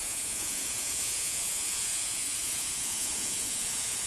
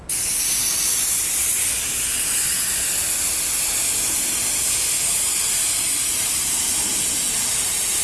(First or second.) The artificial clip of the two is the first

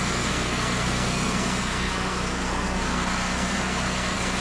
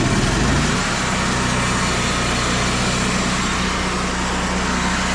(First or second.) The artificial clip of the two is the first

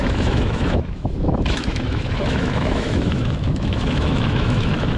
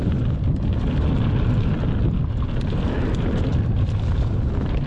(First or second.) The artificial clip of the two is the first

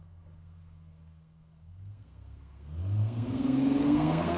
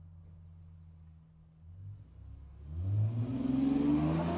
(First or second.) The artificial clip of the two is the first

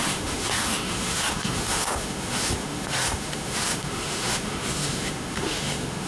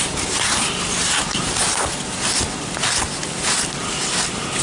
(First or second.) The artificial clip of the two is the first